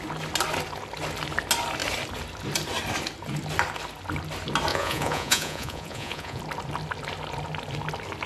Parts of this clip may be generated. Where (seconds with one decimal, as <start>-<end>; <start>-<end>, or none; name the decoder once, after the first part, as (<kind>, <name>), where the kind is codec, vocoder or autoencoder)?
4.7-6.4 (vocoder, Vocos)